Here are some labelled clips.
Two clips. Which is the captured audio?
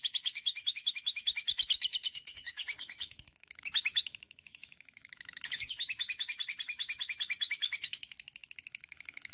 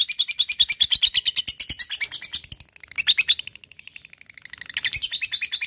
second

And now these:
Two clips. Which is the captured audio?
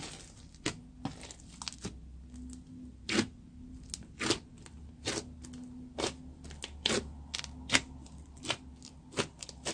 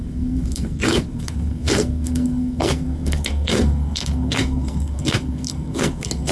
first